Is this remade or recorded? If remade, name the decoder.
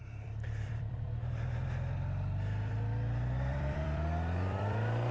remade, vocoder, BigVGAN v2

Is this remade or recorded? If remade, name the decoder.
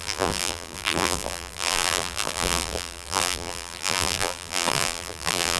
remade, vocoder, BigVGAN v2